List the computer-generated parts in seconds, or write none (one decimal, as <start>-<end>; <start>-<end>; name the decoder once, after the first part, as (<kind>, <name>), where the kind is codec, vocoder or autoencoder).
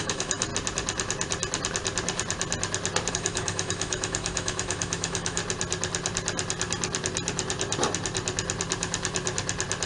0.0-0.5 (autoencoder, DAC-VAE); 3.1-5.4